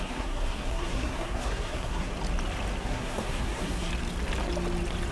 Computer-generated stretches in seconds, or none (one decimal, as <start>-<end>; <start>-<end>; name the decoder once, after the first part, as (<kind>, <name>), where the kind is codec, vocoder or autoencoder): 0.0-2.1 (codec, SNAC); 2.8-3.9